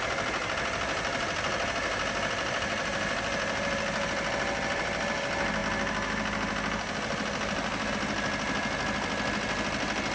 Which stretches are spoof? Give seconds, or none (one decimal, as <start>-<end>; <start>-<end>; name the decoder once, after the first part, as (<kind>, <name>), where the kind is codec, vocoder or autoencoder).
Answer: none